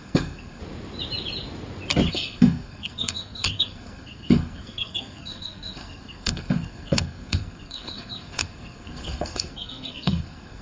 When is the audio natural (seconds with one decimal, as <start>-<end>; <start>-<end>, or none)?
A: 0.6-2.1